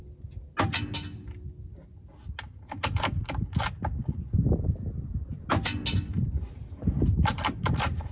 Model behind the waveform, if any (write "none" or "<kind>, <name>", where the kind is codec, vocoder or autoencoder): none